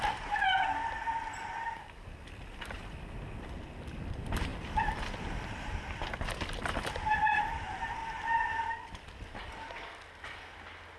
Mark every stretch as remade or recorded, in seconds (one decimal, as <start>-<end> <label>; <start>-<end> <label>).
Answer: 0.0-11.0 recorded